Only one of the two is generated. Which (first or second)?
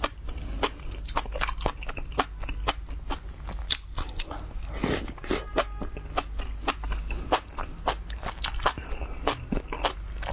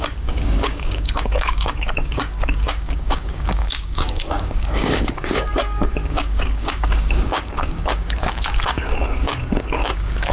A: second